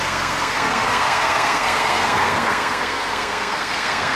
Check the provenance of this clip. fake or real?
fake